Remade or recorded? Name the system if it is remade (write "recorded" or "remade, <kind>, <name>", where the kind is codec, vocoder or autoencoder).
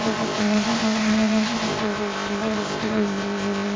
remade, codec, ZipCodec